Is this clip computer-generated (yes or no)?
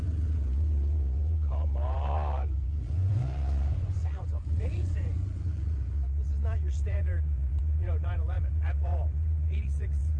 yes